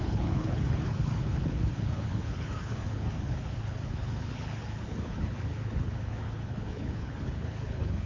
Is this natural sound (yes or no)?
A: no